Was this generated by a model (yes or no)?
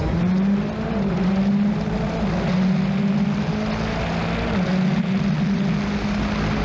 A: no